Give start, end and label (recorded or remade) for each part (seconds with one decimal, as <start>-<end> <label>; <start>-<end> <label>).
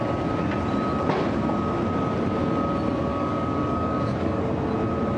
0.0-3.1 recorded; 3.1-4.4 remade; 4.4-5.2 recorded